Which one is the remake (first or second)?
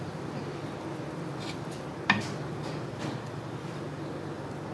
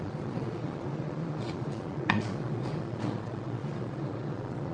second